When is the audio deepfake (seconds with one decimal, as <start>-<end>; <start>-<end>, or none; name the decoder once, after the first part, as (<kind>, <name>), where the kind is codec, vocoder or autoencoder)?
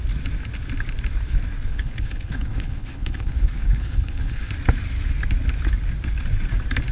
1.7-4.5 (codec, HILCodec)